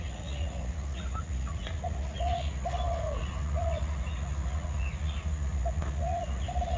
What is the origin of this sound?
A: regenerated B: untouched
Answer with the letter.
A